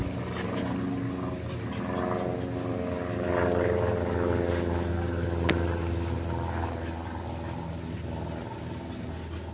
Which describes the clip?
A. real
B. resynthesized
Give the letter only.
A